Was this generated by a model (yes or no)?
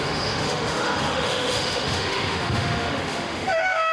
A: yes